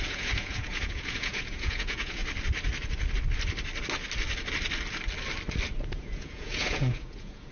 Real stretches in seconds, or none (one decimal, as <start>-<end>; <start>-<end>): 2.2-5.9